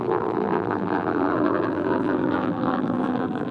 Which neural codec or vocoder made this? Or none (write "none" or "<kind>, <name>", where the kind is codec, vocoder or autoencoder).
vocoder, BigVGAN v2